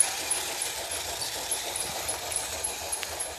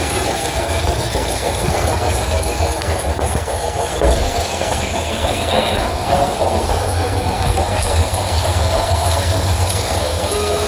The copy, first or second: second